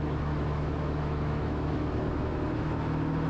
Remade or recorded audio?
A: remade